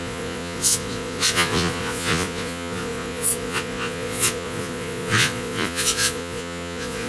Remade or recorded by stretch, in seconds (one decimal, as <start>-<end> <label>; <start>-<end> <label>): 0.0-7.1 remade